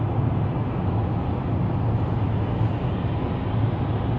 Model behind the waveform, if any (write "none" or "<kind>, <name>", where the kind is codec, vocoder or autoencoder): none